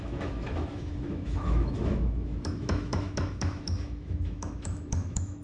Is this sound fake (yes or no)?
yes